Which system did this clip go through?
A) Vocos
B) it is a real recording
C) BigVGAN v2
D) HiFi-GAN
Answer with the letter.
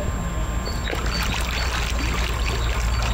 B